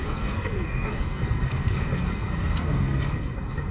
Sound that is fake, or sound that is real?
fake